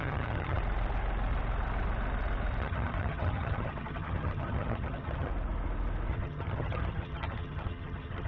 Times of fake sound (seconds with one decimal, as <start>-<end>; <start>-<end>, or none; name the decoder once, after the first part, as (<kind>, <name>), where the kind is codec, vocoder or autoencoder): 0.0-0.6 (vocoder, HiFi-GAN); 2.6-5.3; 6.1-8.3